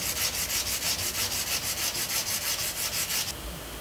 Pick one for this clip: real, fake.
real